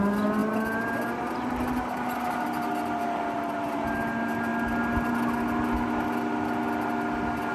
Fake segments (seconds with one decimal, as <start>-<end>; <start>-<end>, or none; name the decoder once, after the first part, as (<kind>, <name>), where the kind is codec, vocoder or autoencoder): none